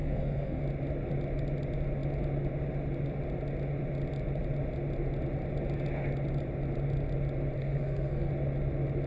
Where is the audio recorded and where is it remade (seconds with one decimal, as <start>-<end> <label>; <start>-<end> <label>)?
0.0-0.6 remade; 0.6-7.6 recorded; 7.6-8.3 remade; 8.3-9.1 recorded